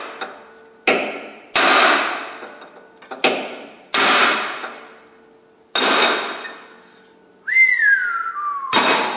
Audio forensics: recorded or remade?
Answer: recorded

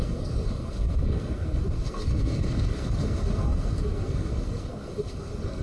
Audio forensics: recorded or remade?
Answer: remade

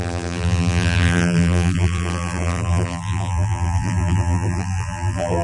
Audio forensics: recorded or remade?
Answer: remade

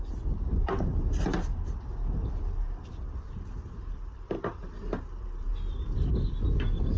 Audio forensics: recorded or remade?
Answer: recorded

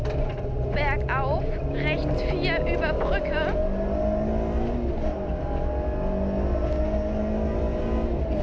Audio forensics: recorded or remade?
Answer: recorded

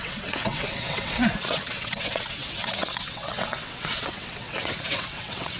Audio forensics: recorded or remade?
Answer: remade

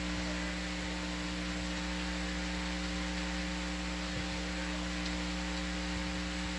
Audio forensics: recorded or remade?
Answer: recorded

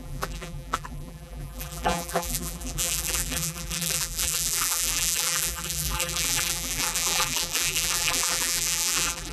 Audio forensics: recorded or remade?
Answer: remade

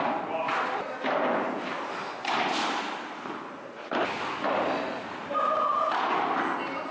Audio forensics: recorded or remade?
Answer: recorded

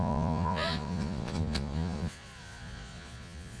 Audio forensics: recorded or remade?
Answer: remade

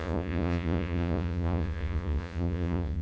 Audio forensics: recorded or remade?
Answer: remade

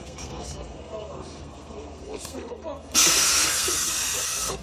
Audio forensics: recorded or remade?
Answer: remade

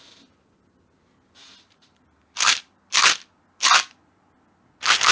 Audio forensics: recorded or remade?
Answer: recorded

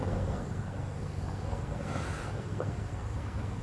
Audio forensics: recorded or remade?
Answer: remade